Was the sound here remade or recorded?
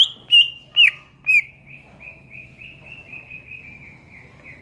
recorded